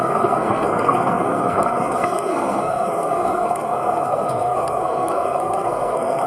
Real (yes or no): no